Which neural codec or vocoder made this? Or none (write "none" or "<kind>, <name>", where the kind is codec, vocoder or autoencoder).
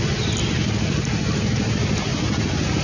none